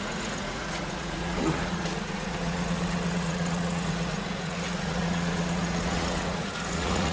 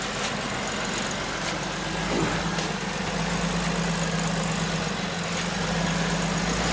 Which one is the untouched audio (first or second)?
second